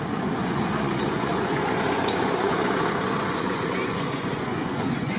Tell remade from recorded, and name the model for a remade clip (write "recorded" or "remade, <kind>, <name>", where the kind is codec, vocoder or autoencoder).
remade, vocoder, Vocos